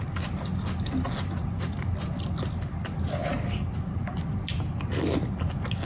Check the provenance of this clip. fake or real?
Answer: real